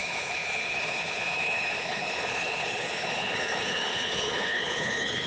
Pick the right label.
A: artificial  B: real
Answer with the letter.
A